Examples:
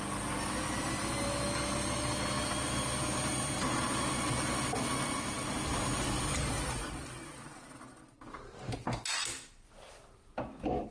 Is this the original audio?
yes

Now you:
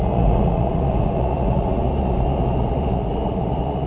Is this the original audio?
no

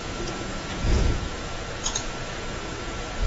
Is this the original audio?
no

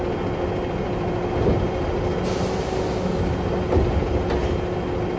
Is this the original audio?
yes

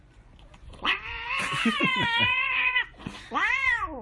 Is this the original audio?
no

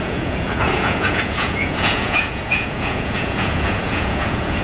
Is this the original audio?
no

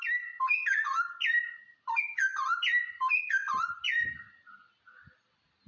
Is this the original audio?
yes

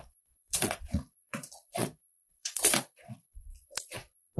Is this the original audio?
no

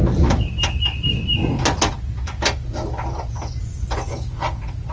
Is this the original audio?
yes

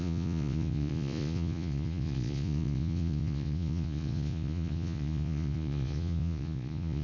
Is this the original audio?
no